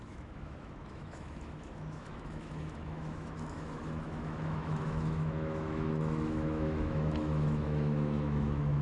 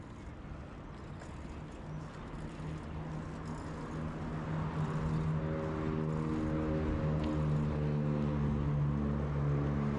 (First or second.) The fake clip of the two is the first